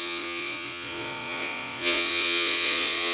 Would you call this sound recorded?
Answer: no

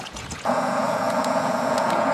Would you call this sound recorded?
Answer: no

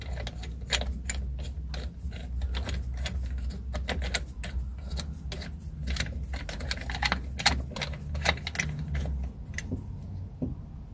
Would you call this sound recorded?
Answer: yes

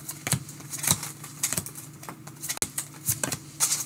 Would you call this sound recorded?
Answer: yes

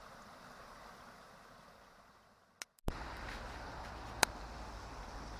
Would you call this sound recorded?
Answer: yes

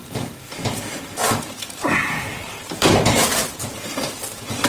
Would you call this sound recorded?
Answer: no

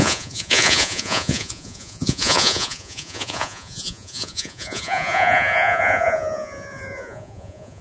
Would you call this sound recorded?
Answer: no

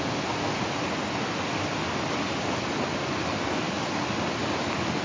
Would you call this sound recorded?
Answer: yes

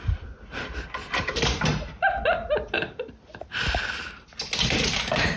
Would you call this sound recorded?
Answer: yes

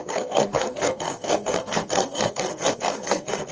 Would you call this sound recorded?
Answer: no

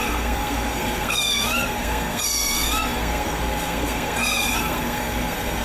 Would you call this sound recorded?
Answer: no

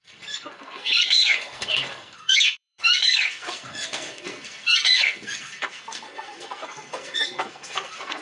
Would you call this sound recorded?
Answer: no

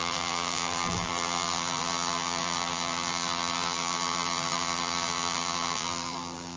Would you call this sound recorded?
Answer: no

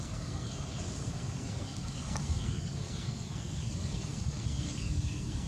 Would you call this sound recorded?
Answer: no